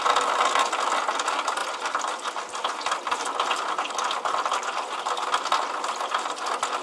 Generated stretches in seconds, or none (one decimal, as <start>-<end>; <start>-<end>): none